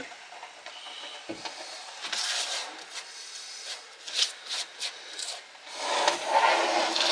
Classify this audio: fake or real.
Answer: real